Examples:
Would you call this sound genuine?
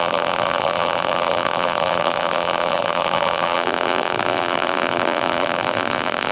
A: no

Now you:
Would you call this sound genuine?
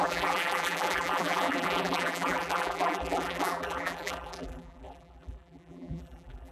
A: no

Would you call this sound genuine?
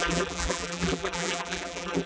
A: no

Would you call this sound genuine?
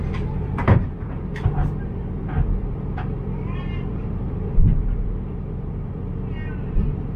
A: no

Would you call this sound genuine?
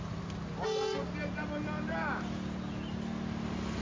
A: yes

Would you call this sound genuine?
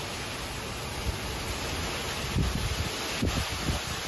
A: yes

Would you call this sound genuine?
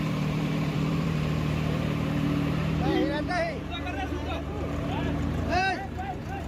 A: no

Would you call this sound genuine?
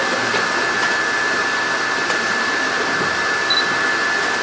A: yes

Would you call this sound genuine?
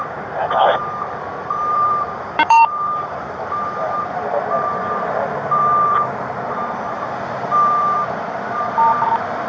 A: no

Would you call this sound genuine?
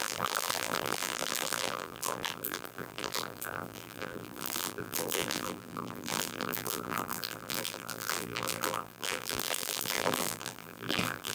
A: no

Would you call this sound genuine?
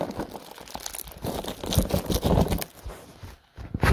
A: yes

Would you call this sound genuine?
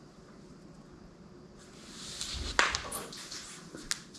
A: yes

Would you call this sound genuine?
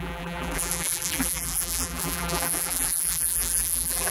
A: no